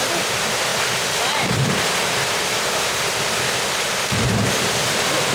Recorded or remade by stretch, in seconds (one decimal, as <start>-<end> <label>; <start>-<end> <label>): 0.0-0.7 recorded; 0.7-3.7 remade; 3.7-5.3 recorded